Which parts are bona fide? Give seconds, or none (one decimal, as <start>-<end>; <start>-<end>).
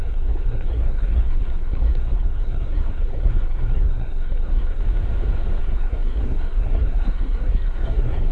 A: 4.8-5.6